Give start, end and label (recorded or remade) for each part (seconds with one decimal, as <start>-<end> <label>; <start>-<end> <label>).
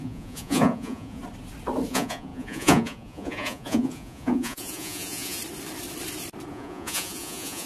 0.0-1.2 remade; 1.2-1.9 recorded; 1.9-5.4 remade; 5.4-6.5 recorded; 6.5-7.7 remade